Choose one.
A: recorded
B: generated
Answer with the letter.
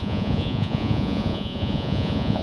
B